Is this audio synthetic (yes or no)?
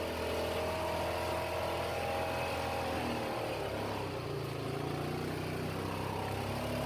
no